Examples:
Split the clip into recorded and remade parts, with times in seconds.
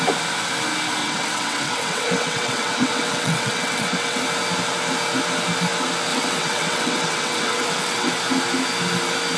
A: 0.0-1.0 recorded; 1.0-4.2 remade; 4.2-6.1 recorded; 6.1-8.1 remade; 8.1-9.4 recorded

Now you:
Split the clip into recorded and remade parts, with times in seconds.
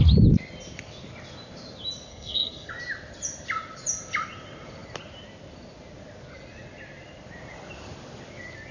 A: 0.0-2.1 recorded; 2.1-2.7 remade; 2.7-8.7 recorded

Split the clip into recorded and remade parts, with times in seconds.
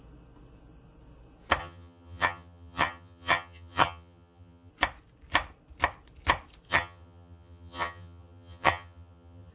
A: 0.0-1.6 recorded; 1.6-4.7 remade; 4.7-6.7 recorded; 6.7-9.5 remade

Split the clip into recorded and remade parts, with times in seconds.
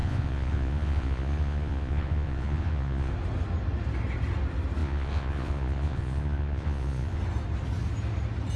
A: 0.0-3.1 remade; 3.1-4.8 recorded; 4.8-7.2 remade; 7.2-8.6 recorded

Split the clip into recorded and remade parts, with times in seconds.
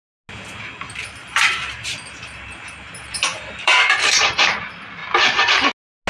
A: 0.0-1.2 recorded; 1.2-4.6 remade; 4.6-6.1 recorded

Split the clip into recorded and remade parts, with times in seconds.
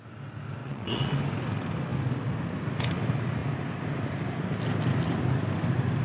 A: 0.0-0.6 recorded; 0.6-1.2 remade; 1.2-6.0 recorded